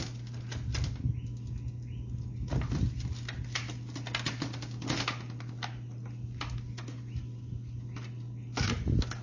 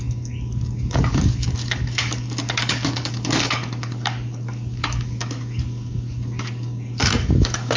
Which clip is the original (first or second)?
first